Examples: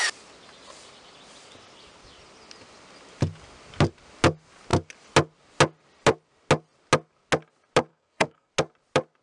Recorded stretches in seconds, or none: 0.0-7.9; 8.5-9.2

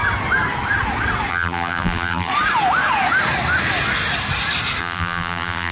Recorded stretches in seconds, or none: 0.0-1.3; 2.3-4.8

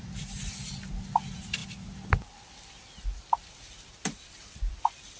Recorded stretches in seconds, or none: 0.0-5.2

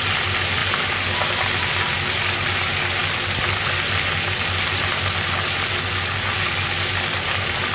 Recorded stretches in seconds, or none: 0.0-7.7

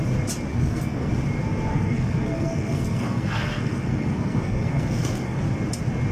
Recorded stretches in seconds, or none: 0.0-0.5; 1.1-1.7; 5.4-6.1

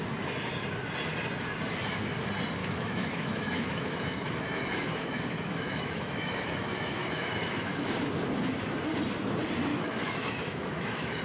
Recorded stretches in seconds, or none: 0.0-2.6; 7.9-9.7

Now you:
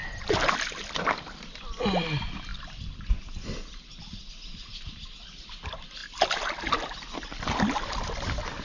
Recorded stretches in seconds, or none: 0.0-8.6

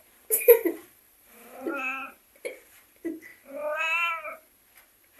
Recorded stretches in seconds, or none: 0.0-0.8; 1.7-5.2